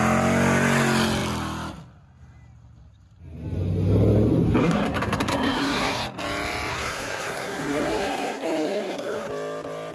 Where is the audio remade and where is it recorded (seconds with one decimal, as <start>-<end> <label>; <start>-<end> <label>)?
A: 0.0-4.6 recorded; 4.6-6.0 remade; 6.0-6.7 recorded; 6.7-9.3 remade; 9.3-9.9 recorded